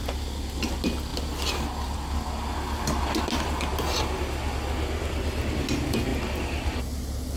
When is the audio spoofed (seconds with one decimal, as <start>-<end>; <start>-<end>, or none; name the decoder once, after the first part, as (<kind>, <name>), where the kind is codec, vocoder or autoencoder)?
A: none